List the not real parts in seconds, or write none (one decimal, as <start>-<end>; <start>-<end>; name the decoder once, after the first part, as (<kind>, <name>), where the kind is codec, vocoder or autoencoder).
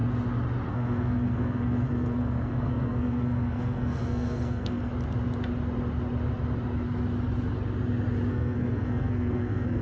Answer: 0.7-4.9 (codec, SNAC); 8.3-9.8